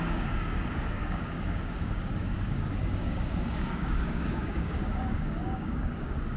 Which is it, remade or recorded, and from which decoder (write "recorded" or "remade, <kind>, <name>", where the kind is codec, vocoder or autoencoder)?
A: remade, codec, DAC